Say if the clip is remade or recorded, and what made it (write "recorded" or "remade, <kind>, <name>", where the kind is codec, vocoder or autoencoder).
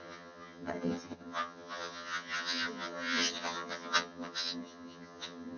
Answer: remade, vocoder, HiFi-GAN